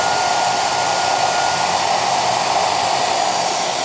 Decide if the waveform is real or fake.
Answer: real